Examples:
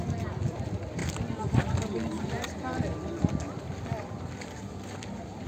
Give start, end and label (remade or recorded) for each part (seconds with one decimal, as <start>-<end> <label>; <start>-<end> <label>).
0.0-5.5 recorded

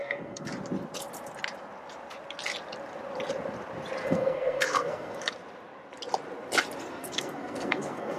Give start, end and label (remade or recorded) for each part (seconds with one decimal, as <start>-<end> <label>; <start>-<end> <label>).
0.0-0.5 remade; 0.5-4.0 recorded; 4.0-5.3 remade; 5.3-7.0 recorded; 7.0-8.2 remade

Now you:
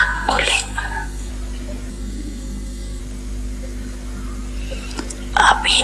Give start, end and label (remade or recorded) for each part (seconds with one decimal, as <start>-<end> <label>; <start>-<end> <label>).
0.0-1.3 remade; 1.3-1.9 recorded; 1.9-3.0 remade; 3.0-5.8 recorded

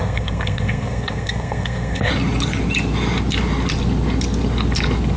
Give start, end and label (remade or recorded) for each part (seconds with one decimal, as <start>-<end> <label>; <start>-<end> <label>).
0.0-2.1 remade; 2.1-5.2 recorded

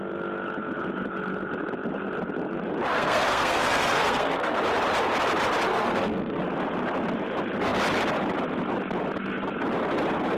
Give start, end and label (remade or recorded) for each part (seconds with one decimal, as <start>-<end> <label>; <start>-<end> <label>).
0.0-2.9 recorded; 2.9-4.6 remade; 4.6-5.7 recorded; 5.7-6.4 remade; 6.4-10.4 recorded

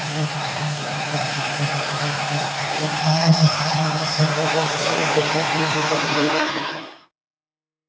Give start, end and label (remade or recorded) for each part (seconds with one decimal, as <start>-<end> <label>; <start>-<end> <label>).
0.0-7.9 remade